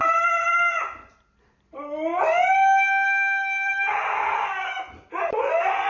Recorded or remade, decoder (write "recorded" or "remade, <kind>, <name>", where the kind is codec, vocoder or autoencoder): recorded